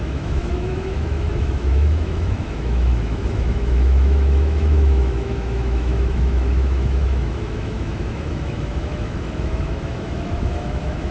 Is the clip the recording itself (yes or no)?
no